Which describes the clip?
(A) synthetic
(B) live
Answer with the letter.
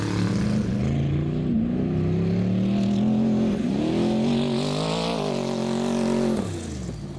B